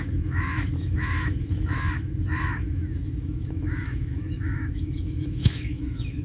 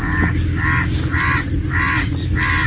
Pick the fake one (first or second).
first